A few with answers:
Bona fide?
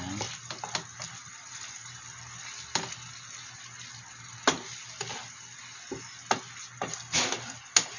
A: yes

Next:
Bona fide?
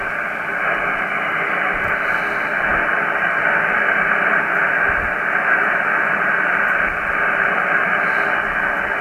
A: yes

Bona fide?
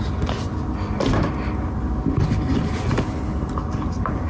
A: yes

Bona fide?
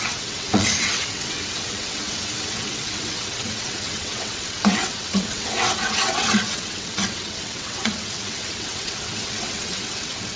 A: no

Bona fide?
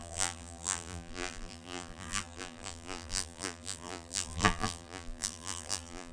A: no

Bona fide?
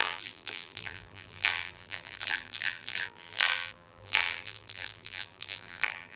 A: no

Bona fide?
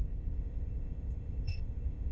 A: no